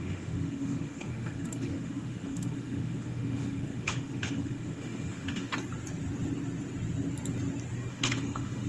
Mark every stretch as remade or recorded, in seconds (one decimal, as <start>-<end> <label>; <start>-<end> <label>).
0.0-5.5 remade; 5.5-7.9 recorded; 7.9-8.7 remade